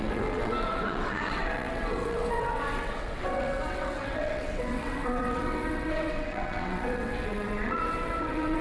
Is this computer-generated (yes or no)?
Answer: yes